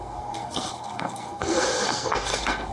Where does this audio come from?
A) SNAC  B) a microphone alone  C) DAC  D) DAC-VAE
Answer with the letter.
A